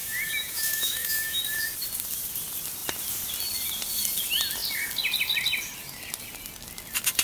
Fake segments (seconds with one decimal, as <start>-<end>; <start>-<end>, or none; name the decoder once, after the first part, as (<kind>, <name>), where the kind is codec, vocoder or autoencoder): 0.0-1.4 (autoencoder, DAC-VAE)